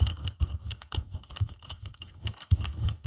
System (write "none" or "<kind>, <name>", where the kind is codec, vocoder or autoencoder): codec, SNAC